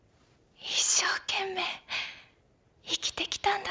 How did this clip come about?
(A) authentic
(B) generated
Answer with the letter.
A